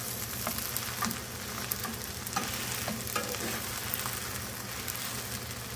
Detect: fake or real real